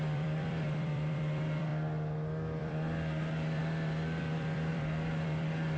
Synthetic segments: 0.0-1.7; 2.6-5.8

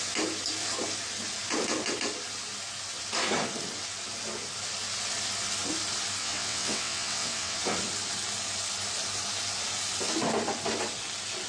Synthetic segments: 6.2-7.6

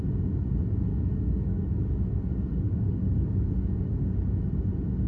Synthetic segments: 0.9-3.9

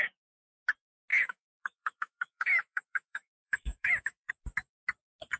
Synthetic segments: 1.1-4.3